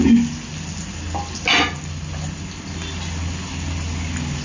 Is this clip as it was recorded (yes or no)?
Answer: yes